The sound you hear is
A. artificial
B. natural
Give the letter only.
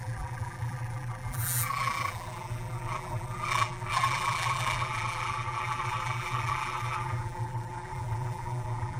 A